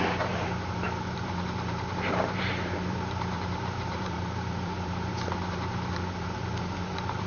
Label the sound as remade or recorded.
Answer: remade